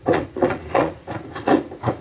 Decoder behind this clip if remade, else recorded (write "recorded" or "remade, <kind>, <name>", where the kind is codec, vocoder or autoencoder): remade, vocoder, Vocos